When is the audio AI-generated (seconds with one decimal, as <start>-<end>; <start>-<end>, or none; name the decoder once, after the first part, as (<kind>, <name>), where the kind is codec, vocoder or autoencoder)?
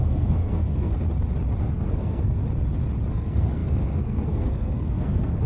0.0-0.9 (codec, SNAC); 1.6-2.4; 3.1-5.5